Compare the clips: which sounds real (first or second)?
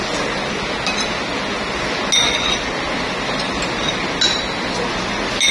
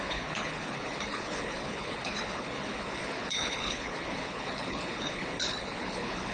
first